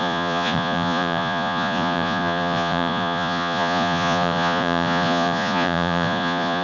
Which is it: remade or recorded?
remade